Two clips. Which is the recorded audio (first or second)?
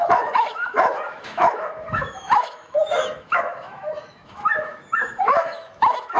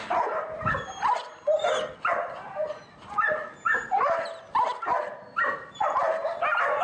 second